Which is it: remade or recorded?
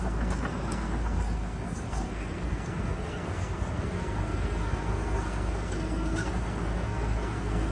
remade